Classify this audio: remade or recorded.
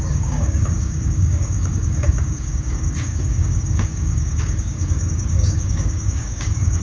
remade